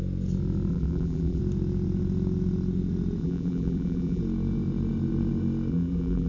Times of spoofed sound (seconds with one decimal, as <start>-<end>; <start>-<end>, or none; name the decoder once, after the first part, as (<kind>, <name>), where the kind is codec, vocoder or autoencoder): 0.7-1.4 (vocoder, BigVGAN v2); 3.2-4.2; 5.7-6.3